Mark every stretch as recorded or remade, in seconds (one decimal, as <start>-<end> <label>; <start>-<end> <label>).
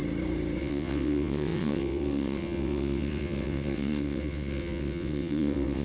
0.0-0.6 recorded; 0.6-5.8 remade